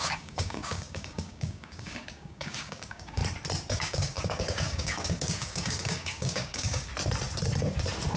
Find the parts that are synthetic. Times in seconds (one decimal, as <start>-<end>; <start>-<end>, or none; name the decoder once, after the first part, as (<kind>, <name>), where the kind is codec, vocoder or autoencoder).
0.0-3.2 (codec, DAC); 3.7-6.9